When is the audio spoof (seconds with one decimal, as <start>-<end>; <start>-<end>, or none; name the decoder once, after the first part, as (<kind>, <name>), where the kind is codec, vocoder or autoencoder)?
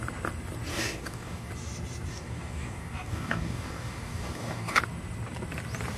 0.7-1.5 (codec, DAC); 2.1-4.8